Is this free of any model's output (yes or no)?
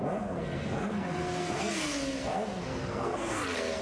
no